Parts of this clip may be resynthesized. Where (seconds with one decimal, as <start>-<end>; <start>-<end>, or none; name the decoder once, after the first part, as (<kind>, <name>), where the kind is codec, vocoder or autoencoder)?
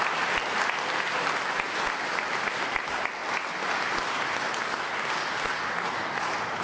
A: none